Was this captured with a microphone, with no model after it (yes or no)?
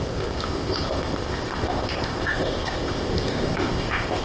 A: no